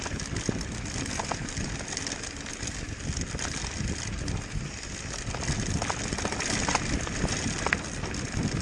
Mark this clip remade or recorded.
recorded